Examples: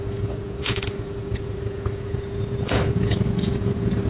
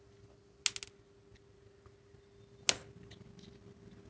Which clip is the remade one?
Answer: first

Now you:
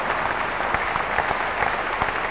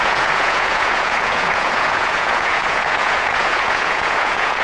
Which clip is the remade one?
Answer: second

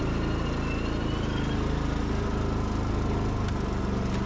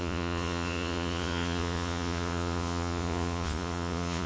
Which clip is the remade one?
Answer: second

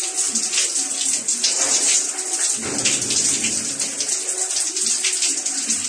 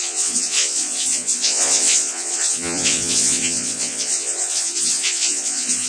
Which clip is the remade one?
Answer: second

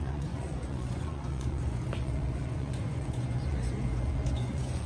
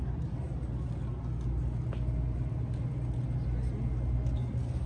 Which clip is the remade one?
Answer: first